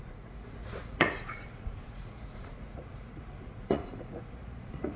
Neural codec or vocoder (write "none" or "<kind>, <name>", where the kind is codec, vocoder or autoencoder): vocoder, Vocos